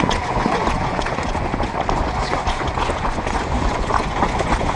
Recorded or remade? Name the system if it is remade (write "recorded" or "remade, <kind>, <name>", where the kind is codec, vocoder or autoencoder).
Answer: remade, vocoder, Vocos